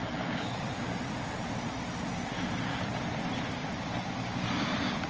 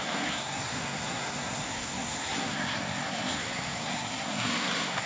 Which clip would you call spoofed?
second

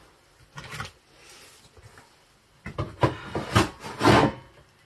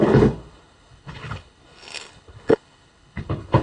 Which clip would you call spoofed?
second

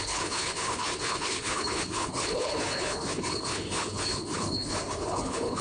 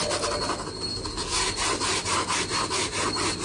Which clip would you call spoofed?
first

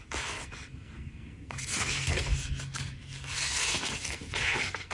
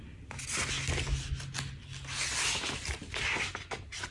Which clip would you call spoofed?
first